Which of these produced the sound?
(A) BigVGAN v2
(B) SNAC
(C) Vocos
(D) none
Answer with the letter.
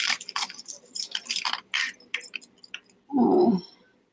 D